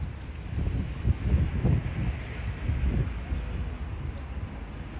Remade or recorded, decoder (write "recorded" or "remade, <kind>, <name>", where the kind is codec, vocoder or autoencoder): recorded